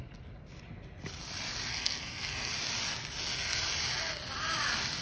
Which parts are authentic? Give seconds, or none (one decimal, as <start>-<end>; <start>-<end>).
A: 0.0-1.7; 2.5-5.0